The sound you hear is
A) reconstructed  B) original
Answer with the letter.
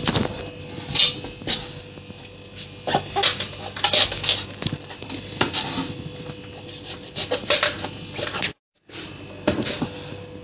B